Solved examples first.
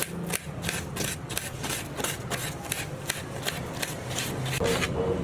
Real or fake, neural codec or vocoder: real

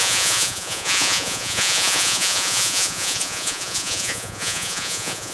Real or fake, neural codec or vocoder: fake, vocoder, Vocos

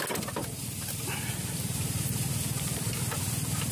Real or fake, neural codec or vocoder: real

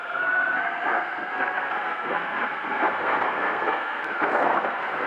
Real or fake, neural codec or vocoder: fake, codec, SNAC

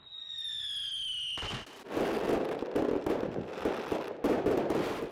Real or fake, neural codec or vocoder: real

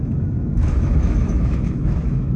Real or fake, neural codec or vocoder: fake, autoencoder, DAC-VAE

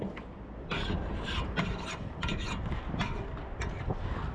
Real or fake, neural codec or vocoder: fake, vocoder, BigVGAN v2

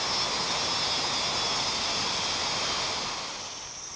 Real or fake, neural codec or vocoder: real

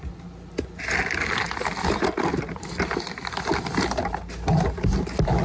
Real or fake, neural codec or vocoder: real